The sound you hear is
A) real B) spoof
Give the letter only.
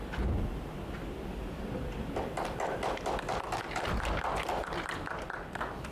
A